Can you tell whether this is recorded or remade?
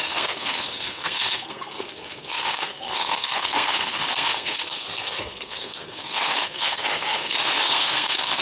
remade